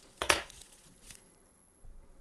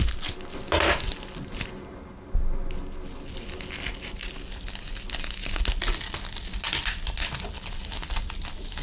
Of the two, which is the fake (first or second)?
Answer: first